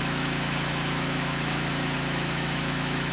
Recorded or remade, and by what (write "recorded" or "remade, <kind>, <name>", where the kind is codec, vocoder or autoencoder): remade, autoencoder, DAC-VAE